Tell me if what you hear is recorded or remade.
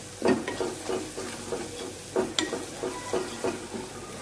recorded